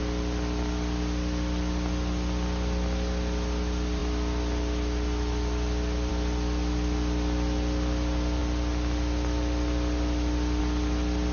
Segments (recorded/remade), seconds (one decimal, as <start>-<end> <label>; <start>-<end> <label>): 0.0-11.3 recorded